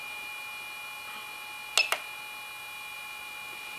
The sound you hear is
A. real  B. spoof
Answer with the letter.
A